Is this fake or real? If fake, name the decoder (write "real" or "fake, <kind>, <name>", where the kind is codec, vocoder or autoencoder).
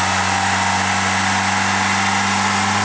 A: real